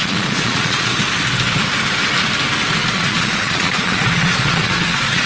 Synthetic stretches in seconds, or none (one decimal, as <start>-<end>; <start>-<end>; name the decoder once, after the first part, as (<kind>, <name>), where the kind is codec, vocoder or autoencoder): 0.0-0.9 (vocoder, Vocos); 2.9-5.3